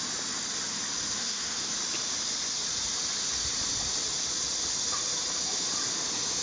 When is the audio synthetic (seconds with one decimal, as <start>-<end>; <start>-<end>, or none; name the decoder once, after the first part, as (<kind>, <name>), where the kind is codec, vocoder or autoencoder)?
1.2-1.7 (codec, SNAC)